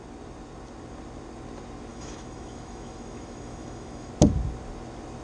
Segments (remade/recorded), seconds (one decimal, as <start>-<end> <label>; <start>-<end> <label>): 0.0-1.9 recorded; 1.9-4.1 remade; 4.1-5.2 recorded